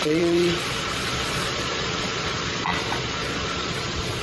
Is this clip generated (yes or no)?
yes